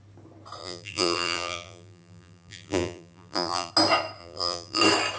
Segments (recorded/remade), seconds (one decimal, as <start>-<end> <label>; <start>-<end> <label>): 0.0-0.6 recorded; 0.6-3.7 remade; 3.7-4.2 recorded; 4.2-4.8 remade; 4.8-5.2 recorded

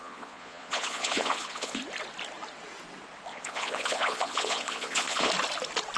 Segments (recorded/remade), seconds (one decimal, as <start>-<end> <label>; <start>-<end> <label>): 0.0-1.8 remade; 1.8-3.3 recorded; 3.3-5.3 remade; 5.3-6.0 recorded

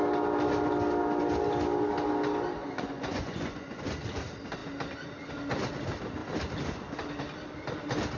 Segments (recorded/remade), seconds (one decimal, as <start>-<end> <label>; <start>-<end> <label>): 0.0-2.6 recorded; 2.6-3.8 remade; 3.8-8.2 recorded

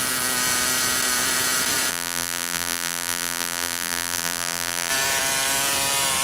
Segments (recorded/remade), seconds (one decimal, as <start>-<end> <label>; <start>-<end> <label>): 0.0-1.9 recorded; 1.9-4.9 remade; 4.9-6.2 recorded

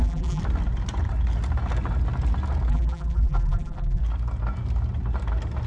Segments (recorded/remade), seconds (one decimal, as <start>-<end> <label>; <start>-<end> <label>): 0.0-0.4 remade; 0.4-2.7 recorded; 2.7-4.0 remade; 4.0-5.7 recorded

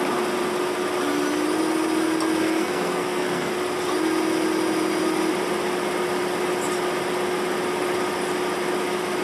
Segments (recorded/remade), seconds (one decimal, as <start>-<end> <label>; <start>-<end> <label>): 0.0-2.4 recorded; 2.4-3.5 remade; 3.5-9.2 recorded

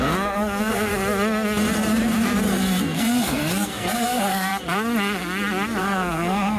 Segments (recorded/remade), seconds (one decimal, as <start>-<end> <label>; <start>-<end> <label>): 0.0-0.9 remade; 0.9-2.8 recorded; 2.8-4.5 remade; 4.5-5.8 recorded; 5.8-6.6 remade